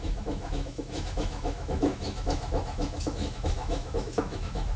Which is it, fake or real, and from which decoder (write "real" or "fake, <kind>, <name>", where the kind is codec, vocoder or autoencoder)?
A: fake, autoencoder, DAC-VAE